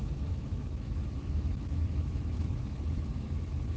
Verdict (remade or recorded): remade